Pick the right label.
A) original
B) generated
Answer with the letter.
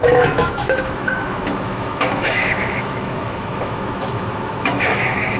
B